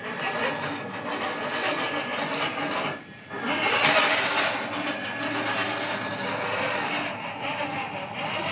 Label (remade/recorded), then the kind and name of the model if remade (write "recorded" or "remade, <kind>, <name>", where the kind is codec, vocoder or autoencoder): recorded